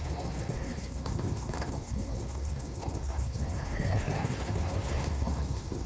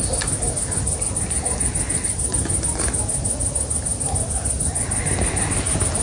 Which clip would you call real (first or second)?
second